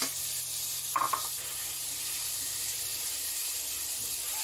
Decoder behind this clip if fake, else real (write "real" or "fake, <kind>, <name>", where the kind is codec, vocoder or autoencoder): fake, vocoder, BigVGAN v2